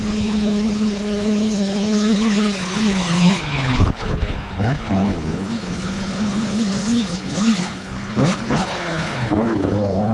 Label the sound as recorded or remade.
remade